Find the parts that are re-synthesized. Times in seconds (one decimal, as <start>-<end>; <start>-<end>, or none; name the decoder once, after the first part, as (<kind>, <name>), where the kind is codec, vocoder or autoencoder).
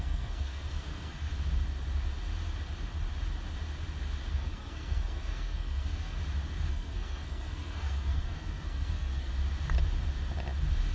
0.0-1.3 (codec, SNAC); 4.3-6.2; 6.7-9.3